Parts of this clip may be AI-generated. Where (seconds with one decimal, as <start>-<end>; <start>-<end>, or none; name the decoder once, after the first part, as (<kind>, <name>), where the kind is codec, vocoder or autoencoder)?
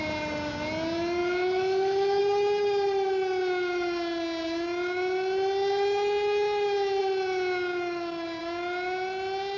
1.2-2.2 (autoencoder, DAC-VAE)